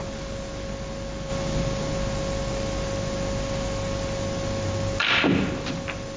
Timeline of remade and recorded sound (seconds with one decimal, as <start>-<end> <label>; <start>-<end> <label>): 0.0-6.2 recorded